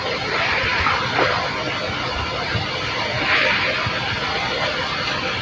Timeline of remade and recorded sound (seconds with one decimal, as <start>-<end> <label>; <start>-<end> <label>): 0.0-5.4 recorded